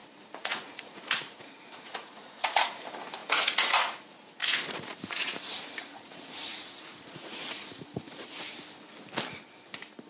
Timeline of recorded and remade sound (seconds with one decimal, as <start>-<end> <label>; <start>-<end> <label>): 0.0-2.8 remade; 2.8-3.2 recorded; 3.2-8.4 remade; 8.4-10.1 recorded